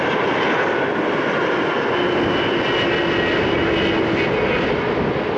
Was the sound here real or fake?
real